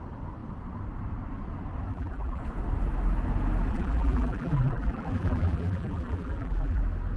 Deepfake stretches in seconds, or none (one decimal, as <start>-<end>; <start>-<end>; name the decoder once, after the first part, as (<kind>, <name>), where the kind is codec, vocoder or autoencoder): 1.9-2.4 (vocoder, BigVGAN v2); 3.7-6.8